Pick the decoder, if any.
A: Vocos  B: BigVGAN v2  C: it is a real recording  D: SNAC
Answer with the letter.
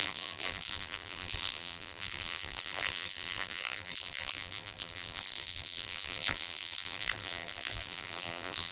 B